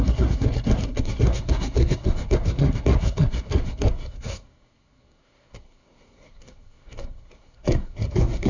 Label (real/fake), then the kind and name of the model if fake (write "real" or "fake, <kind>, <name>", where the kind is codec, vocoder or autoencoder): fake, codec, SNAC